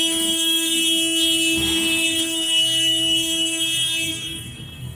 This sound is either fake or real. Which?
fake